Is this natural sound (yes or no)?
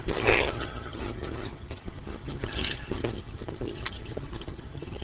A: no